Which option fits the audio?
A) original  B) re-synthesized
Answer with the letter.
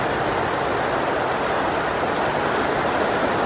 A